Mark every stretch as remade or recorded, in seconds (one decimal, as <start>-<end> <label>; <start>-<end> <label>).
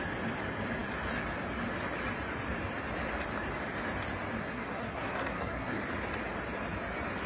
0.0-4.4 recorded; 4.4-5.8 remade; 5.8-7.3 recorded